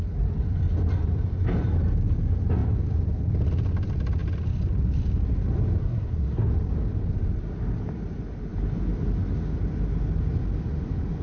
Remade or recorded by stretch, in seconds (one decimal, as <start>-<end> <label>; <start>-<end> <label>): 0.0-5.8 recorded; 5.8-6.5 remade; 6.5-11.2 recorded